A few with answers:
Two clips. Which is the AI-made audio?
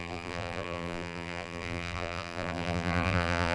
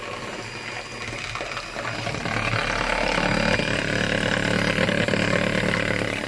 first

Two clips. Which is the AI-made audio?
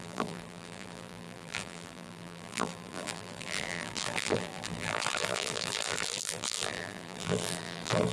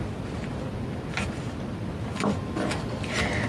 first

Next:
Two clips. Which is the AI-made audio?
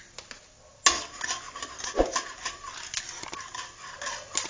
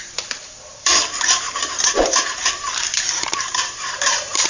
second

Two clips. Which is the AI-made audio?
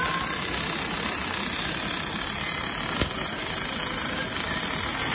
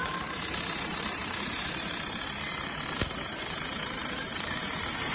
second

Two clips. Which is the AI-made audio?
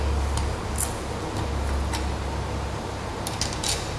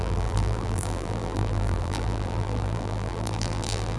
second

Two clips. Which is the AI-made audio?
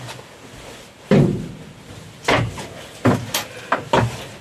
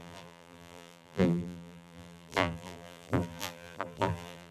second